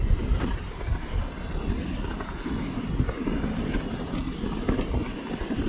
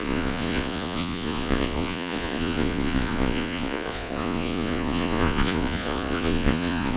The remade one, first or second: second